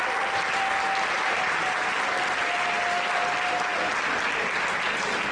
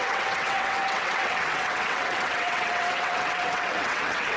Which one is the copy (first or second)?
second